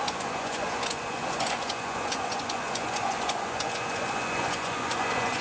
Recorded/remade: remade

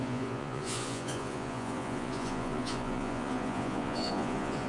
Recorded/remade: remade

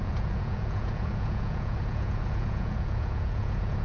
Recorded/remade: remade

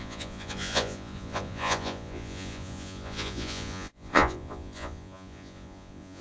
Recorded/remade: remade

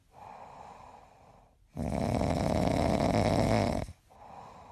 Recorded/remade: recorded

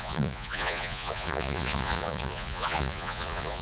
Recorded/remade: remade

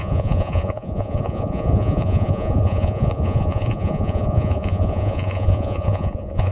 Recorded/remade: remade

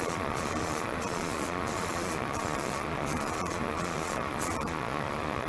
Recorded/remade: remade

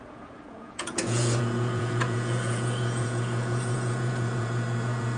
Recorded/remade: remade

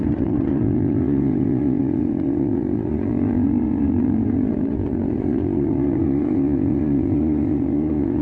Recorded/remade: remade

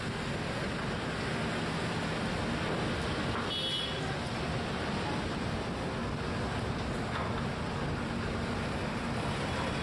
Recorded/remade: recorded